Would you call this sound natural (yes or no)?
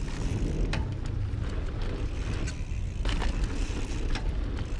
yes